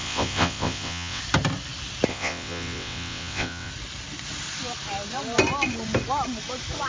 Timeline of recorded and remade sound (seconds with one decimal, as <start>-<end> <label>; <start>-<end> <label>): 0.0-1.2 remade; 1.2-2.1 recorded; 2.1-3.7 remade; 3.7-6.9 recorded